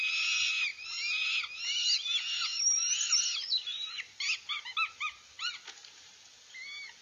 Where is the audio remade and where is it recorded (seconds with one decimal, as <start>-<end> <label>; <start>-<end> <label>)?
0.0-7.0 recorded